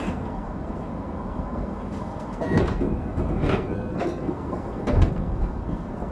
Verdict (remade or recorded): remade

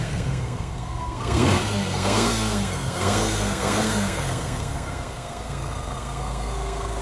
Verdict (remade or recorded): remade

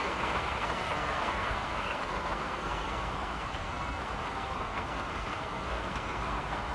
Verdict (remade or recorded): remade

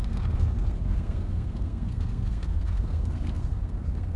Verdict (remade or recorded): remade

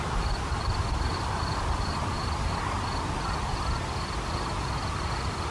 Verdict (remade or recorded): recorded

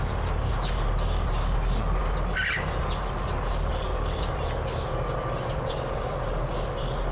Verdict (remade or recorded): recorded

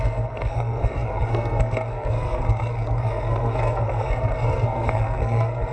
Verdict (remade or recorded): remade